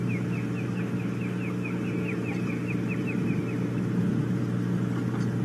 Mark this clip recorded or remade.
recorded